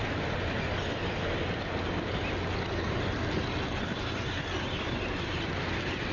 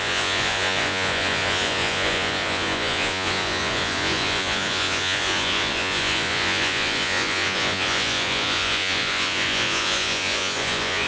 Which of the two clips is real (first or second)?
first